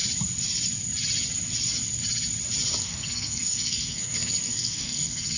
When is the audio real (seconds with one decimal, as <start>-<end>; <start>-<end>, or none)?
0.0-2.8